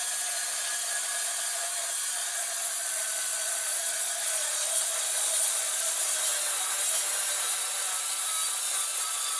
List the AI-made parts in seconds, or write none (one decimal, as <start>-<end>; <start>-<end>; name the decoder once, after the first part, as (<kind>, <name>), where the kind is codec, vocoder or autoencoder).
2.3-6.1 (vocoder, Vocos); 8.9-9.4